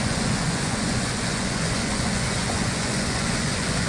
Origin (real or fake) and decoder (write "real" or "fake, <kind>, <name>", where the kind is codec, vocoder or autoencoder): fake, vocoder, Vocos